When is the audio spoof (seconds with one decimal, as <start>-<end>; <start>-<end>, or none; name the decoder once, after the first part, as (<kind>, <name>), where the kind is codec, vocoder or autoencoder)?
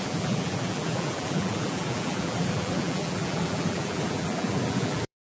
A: 0.0-5.3 (vocoder, BigVGAN v2)